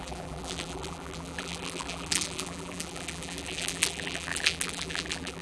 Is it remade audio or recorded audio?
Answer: remade